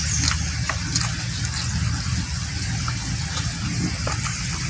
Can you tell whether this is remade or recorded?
recorded